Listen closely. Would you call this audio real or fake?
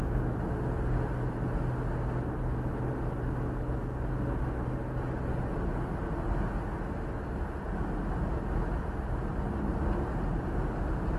real